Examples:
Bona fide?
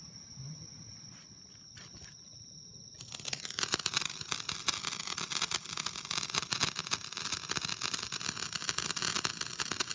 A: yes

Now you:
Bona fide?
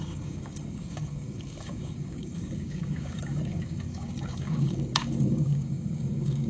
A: no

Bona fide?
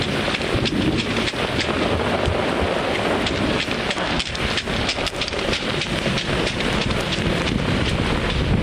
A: yes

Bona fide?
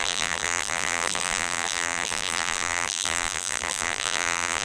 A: no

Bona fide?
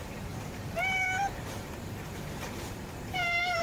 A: no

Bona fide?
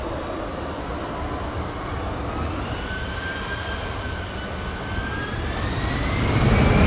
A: yes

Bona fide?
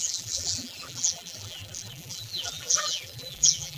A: no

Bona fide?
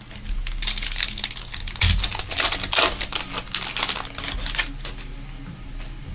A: yes